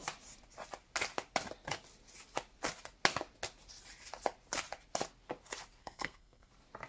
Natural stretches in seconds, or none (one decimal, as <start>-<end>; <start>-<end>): 0.0-5.8; 6.5-6.9